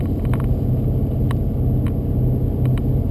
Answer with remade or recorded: recorded